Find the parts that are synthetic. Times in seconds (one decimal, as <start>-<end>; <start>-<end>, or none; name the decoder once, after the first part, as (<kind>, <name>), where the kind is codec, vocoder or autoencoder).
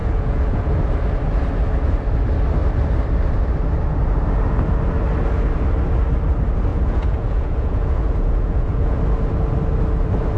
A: 0.0-0.6 (vocoder, Vocos); 6.7-9.0